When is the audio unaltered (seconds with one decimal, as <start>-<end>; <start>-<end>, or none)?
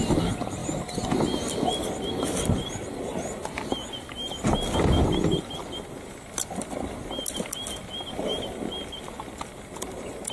0.0-10.3